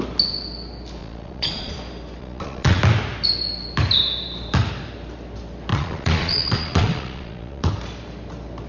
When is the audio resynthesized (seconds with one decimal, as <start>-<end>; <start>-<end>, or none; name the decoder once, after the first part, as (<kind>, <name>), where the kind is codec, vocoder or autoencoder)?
1.0-1.7 (vocoder, Vocos); 2.2-2.8; 5.7-7.7